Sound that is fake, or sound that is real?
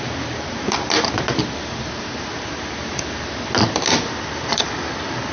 real